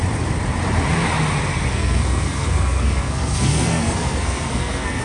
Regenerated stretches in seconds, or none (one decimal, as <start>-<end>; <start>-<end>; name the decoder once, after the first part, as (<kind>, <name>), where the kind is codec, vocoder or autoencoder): 1.7-5.0 (codec, SNAC)